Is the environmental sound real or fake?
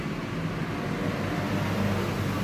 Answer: real